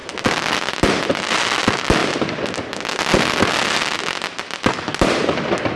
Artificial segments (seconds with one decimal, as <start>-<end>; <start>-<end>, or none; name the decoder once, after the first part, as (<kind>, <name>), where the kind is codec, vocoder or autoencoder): none